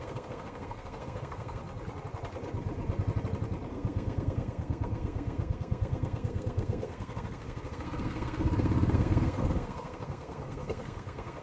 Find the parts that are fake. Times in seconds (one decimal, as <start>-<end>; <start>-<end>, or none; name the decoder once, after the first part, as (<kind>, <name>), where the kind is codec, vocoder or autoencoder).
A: 0.0-1.6 (codec, SNAC); 3.7-11.4